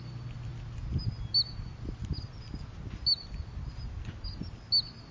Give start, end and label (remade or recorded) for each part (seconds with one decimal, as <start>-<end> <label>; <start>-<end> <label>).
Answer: 0.0-0.8 recorded; 0.8-1.3 remade; 1.3-2.0 recorded; 2.0-3.9 remade; 3.9-5.1 recorded